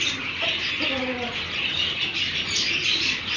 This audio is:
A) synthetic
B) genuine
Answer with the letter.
B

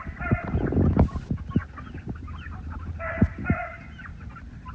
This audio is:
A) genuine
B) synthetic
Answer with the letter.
A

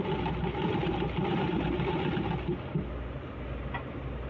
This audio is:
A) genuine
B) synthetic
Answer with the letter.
A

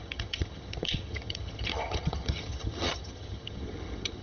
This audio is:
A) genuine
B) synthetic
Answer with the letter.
B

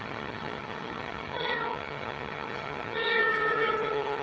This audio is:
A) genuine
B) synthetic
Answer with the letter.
B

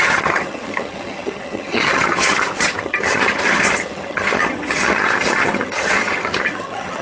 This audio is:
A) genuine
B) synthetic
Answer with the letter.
B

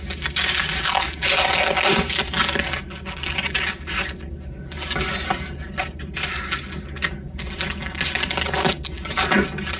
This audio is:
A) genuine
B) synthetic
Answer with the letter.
A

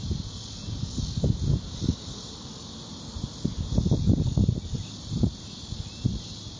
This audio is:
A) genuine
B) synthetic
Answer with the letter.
A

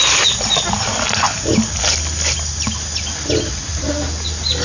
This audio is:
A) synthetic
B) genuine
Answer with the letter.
B